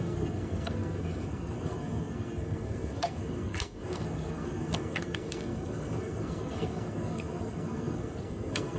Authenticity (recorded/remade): remade